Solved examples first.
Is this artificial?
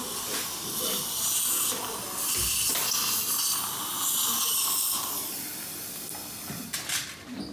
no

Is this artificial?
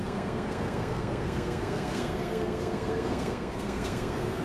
yes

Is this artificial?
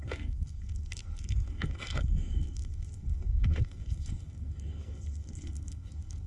yes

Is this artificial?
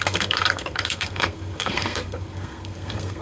yes